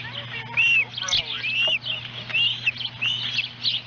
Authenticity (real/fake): real